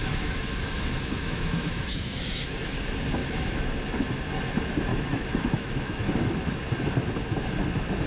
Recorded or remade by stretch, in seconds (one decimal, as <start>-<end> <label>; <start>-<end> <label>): 0.0-2.8 remade; 2.8-3.2 recorded; 3.2-3.8 remade; 3.8-4.9 recorded; 4.9-6.1 remade; 6.1-8.1 recorded